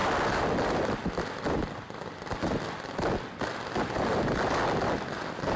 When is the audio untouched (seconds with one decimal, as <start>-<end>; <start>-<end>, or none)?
0.0-5.6